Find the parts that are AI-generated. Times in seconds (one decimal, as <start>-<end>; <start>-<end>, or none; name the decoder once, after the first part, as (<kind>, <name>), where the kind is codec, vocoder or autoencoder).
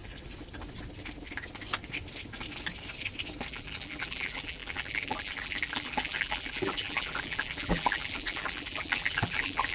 3.5-9.7 (vocoder, BigVGAN v2)